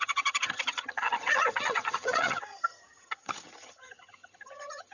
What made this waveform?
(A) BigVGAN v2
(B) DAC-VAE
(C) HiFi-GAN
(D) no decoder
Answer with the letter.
C